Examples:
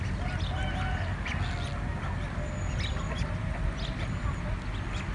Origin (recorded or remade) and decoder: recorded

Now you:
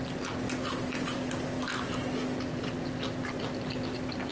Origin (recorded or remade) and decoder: recorded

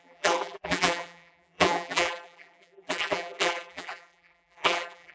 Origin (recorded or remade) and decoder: remade, vocoder, BigVGAN v2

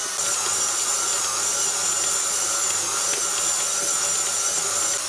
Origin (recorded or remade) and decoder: recorded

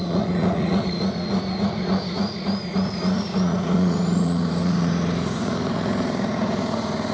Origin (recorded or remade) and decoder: remade, vocoder, Vocos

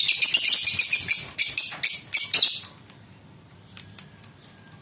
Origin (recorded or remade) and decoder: recorded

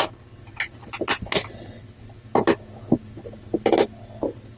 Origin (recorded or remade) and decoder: recorded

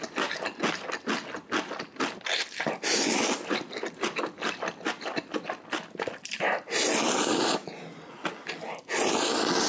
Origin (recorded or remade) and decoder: recorded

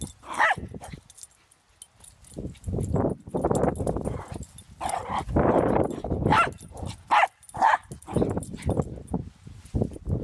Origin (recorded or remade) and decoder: recorded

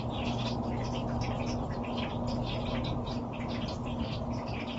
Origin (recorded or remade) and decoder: recorded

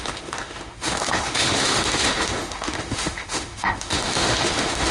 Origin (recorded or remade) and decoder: remade, autoencoder, DAC-VAE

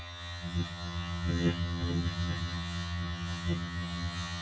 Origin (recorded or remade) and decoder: remade, vocoder, HiFi-GAN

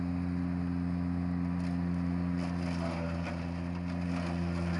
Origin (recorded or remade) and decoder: recorded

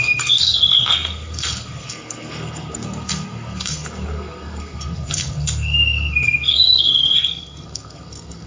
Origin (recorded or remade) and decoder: remade, codec, SNAC